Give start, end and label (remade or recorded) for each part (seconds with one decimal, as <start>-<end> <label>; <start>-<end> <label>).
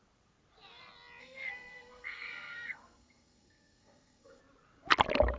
0.0-1.2 recorded; 1.2-4.4 remade; 4.4-5.4 recorded